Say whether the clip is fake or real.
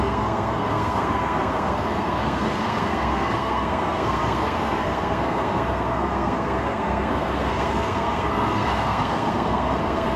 fake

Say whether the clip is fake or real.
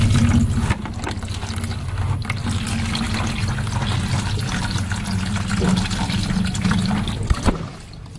real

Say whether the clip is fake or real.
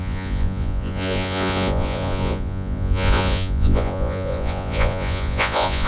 fake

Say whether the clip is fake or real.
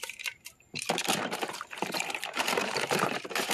fake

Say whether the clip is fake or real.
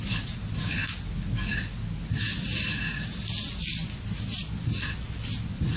real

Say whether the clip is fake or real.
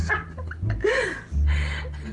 real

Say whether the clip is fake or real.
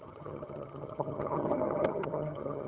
fake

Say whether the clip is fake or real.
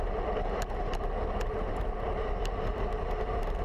real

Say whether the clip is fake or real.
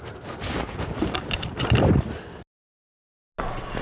real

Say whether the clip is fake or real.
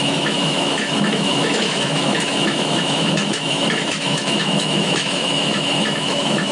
fake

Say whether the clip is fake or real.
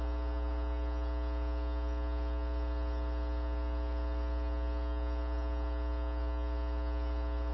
real